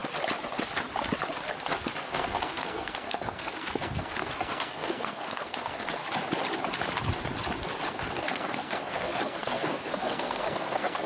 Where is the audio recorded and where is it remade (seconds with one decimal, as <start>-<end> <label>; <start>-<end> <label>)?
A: 0.0-2.0 recorded; 2.0-6.0 remade; 6.0-7.9 recorded; 7.9-11.1 remade